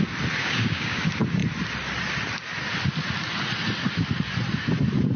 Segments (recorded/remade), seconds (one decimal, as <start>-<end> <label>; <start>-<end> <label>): 0.0-0.4 recorded; 0.4-1.0 remade; 1.0-5.2 recorded